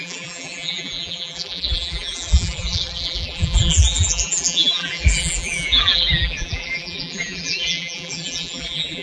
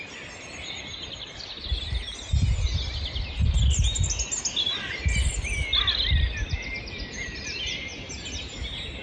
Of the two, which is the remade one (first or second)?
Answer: first